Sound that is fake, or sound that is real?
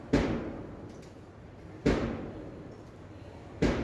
real